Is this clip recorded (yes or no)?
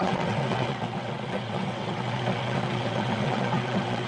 no